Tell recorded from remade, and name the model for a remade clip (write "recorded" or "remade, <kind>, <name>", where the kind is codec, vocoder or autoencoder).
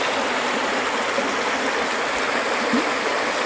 recorded